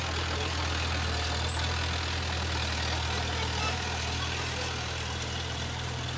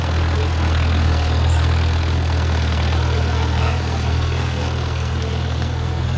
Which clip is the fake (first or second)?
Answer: second